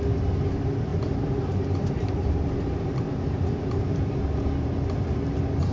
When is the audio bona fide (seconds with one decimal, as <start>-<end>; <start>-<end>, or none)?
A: 0.0-0.9; 4.2-5.7